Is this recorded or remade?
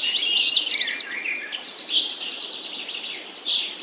recorded